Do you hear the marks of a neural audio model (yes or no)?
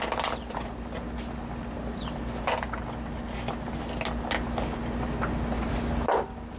no